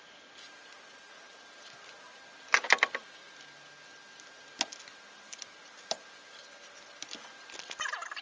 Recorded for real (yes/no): yes